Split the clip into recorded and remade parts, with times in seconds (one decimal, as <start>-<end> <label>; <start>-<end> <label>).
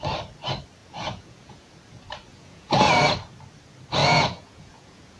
0.0-0.8 recorded; 0.8-1.7 remade; 1.7-2.3 recorded; 2.3-2.9 remade; 2.9-4.0 recorded; 4.0-5.2 remade